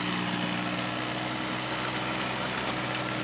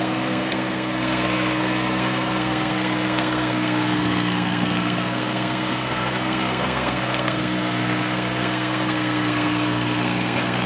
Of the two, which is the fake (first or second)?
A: second